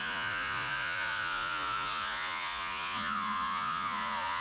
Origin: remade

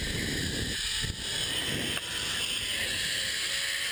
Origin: recorded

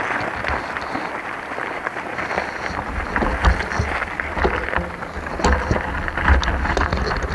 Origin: recorded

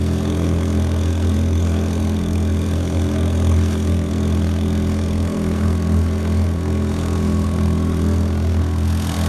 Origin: remade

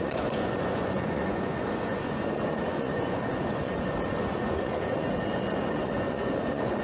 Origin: remade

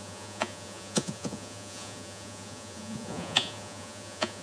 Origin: remade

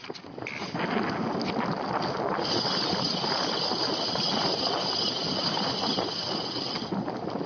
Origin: recorded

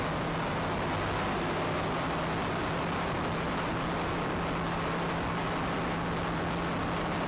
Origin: recorded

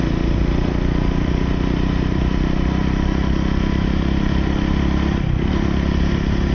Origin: recorded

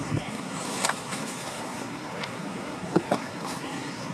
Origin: remade